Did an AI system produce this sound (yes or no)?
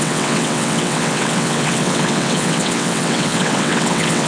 yes